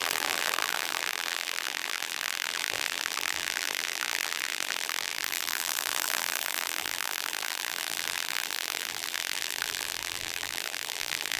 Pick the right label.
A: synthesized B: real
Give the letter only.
A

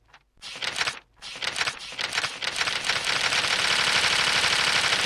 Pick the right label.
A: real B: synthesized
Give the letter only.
A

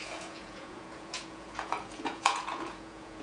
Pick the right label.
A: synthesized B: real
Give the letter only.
A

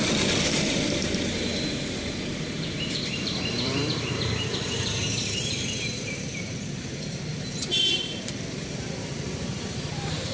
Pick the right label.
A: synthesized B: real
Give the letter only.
A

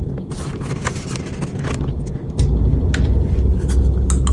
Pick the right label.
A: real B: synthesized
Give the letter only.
A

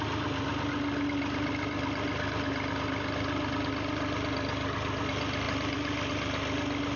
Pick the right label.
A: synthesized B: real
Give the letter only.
B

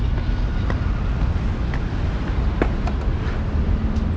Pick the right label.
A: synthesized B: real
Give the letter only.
B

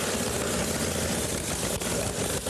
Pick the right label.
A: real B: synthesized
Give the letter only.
A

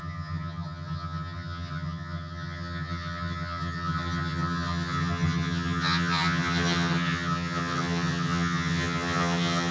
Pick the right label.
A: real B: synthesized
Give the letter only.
B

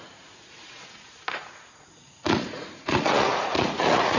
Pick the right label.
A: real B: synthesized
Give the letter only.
B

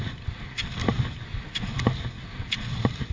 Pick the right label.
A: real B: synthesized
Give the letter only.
A